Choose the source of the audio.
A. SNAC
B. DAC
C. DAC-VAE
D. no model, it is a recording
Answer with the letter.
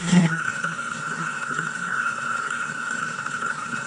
A